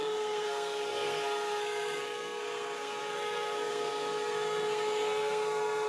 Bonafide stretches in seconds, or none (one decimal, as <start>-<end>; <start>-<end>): none